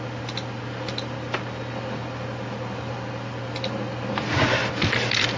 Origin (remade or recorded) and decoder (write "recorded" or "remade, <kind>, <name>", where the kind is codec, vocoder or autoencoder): recorded